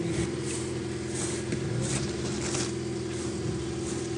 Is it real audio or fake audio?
real